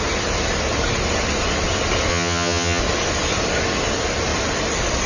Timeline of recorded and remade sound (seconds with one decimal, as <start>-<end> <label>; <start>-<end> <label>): 0.0-2.1 recorded; 2.1-2.8 remade; 2.8-5.1 recorded